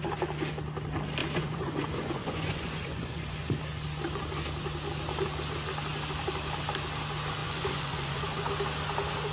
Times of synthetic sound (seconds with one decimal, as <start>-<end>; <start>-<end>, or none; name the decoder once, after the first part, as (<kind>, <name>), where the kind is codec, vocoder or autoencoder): 1.2-3.6 (vocoder, Vocos); 7.4-8.5

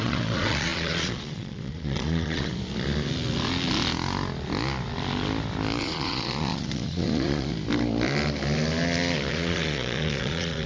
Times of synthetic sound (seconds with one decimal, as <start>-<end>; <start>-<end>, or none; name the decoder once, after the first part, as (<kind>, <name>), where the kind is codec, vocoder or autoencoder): 0.0-2.5 (vocoder, Vocos); 5.8-7.5; 9.3-10.7

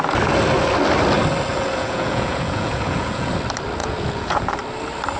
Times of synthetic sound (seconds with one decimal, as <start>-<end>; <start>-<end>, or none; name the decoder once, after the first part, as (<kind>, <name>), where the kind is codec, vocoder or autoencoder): 1.5-3.3 (vocoder, Vocos); 3.8-4.5

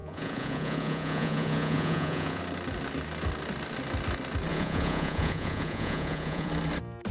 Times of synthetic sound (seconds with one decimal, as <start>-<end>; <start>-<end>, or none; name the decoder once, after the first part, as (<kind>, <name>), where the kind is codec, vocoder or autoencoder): 0.0-2.4 (vocoder, Vocos); 4.5-6.5

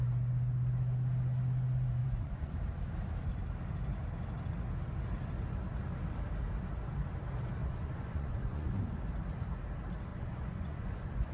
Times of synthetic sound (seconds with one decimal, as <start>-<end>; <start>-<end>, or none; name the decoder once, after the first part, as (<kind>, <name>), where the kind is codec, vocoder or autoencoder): 2.0-2.5 (vocoder, Vocos); 7.6-8.8; 10.1-11.3